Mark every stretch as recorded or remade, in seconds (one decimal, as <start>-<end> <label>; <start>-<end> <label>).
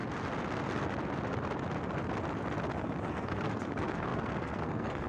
0.0-3.1 recorded; 3.1-5.1 remade